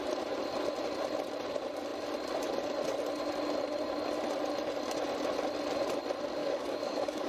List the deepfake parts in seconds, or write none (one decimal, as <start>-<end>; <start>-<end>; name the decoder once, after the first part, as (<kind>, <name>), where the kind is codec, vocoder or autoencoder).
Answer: 6.4-7.3 (codec, DAC)